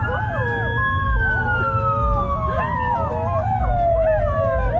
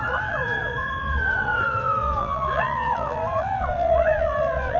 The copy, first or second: second